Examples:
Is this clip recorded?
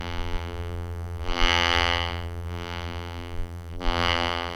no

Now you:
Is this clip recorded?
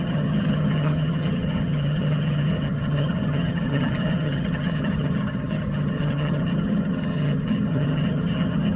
no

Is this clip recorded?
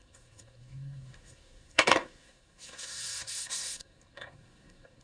no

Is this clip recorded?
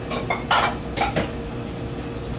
yes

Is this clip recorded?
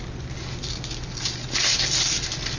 yes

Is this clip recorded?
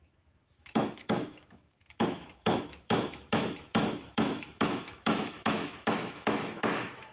no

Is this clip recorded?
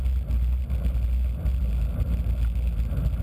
yes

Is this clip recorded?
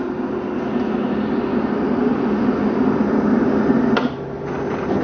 yes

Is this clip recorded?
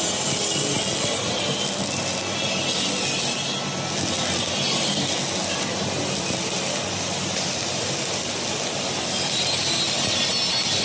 yes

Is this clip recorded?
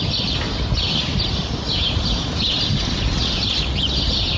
yes